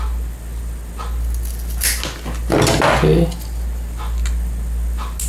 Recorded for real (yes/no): yes